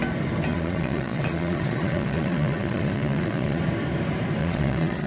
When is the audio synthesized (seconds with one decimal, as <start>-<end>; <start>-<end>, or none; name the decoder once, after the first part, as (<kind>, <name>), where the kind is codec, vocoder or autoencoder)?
0.5-3.6 (vocoder, Vocos); 4.4-5.1